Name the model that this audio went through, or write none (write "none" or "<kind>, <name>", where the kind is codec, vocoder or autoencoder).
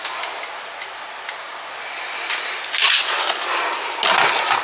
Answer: none